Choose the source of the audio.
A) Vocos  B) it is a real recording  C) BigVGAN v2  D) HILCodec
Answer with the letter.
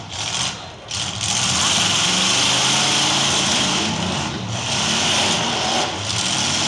B